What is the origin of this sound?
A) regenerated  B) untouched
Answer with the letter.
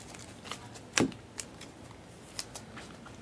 B